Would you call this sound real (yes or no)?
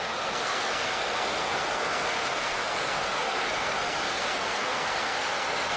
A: no